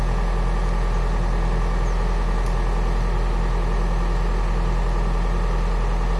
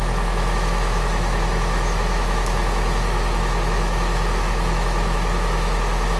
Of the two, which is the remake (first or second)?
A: second